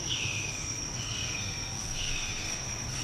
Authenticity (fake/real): fake